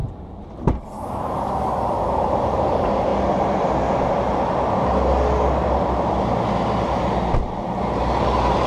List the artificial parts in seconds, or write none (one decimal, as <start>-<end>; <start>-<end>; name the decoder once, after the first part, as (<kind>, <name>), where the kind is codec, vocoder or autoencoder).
0.0-3.1 (vocoder, BigVGAN v2); 7.8-8.7